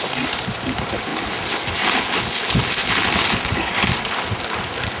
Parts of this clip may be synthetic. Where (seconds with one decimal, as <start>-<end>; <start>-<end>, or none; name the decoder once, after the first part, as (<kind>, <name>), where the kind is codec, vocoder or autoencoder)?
none